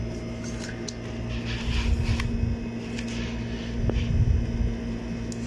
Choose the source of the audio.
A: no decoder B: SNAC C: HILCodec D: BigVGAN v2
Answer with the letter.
A